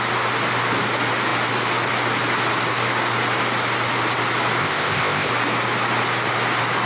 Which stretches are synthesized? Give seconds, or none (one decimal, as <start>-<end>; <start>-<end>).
4.6-5.3